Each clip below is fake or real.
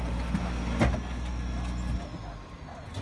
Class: real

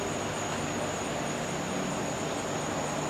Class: real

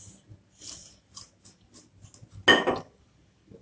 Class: real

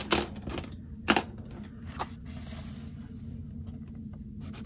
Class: real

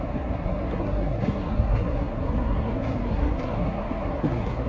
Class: fake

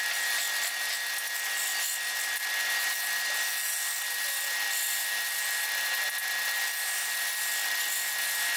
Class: real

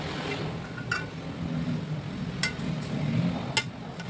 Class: real